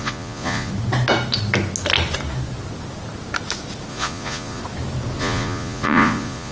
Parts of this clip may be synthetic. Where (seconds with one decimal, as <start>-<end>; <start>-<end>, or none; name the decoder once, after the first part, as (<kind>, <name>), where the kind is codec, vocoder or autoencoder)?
0.0-0.7 (vocoder, Vocos); 3.9-4.6; 5.2-6.5